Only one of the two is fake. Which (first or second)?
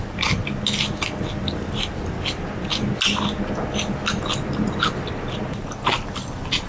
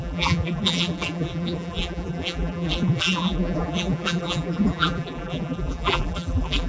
second